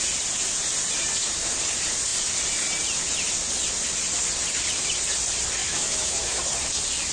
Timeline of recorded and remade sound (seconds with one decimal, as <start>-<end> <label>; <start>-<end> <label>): 0.0-5.6 recorded; 5.6-6.4 remade; 6.4-7.1 recorded